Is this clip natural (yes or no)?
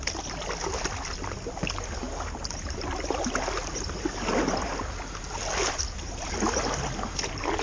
yes